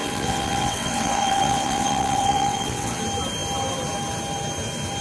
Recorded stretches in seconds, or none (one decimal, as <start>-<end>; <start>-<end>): 3.0-5.0

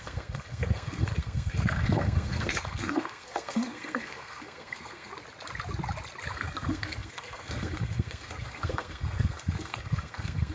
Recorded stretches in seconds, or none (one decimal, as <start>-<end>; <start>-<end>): 5.1-6.3

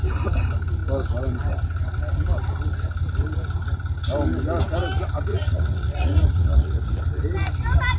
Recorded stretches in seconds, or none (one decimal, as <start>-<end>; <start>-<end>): 0.0-5.3; 7.0-8.0

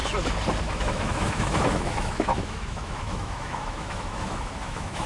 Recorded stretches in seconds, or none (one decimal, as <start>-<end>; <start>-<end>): 0.0-0.6

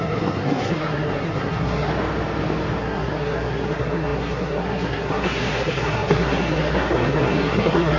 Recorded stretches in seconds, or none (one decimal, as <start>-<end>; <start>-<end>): 1.9-2.8

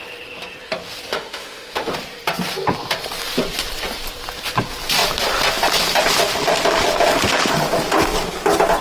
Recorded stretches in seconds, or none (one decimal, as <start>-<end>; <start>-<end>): 0.0-1.1; 1.9-8.8

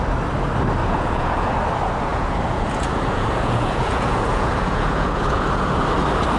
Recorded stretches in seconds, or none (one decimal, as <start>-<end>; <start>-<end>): 0.0-0.8; 1.5-2.1; 5.8-6.4